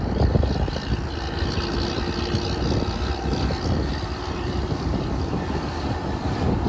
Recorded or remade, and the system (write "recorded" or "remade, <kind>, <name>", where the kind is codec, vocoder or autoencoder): recorded